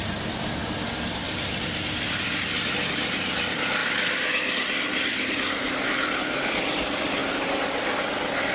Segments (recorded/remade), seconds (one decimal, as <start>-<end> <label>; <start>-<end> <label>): 0.0-8.5 recorded